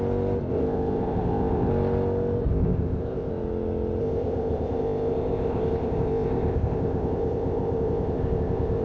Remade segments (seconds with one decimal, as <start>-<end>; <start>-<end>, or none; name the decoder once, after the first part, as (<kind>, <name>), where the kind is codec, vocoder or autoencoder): 0.5-1.7 (codec, ZipCodec); 2.5-3.3; 4.0-8.8